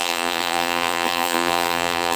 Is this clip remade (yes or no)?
yes